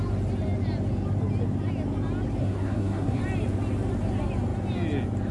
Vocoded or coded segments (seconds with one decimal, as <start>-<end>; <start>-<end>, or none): 2.4-3.2